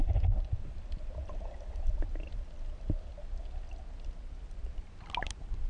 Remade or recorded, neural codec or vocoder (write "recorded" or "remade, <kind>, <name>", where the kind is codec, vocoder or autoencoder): recorded